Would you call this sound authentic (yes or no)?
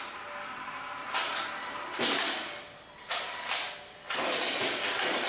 yes